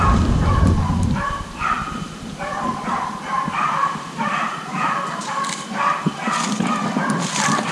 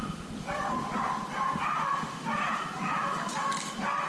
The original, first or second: second